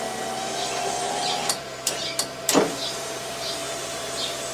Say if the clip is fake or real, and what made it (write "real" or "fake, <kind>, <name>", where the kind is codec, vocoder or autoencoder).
fake, vocoder, BigVGAN v2